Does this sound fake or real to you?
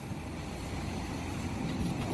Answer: real